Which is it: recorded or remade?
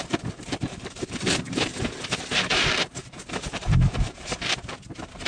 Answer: remade